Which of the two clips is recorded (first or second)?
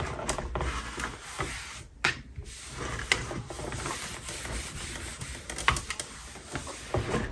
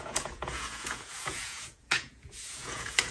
first